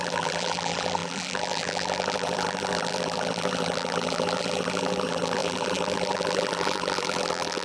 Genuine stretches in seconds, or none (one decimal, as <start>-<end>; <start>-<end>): none